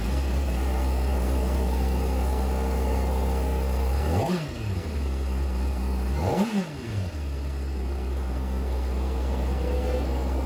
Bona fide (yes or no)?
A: no